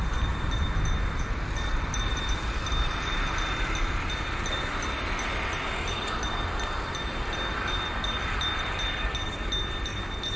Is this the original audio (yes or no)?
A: yes